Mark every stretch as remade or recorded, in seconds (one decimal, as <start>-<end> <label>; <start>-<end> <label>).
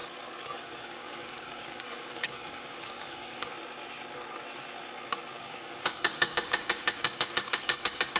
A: 0.0-0.6 recorded; 0.6-3.5 remade; 3.5-5.4 recorded; 5.4-8.2 remade